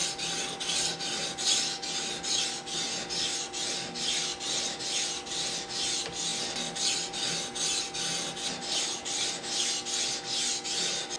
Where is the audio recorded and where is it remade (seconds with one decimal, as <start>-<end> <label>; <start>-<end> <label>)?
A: 0.0-11.2 recorded